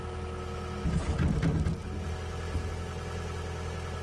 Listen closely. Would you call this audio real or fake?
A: real